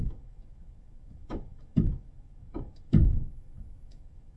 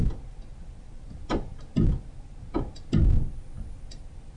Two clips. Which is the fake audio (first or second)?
first